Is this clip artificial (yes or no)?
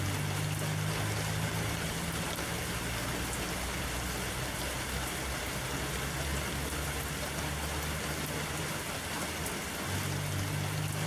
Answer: no